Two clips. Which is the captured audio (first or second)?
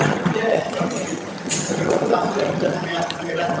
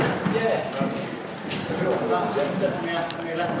second